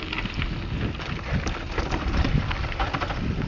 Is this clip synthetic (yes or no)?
no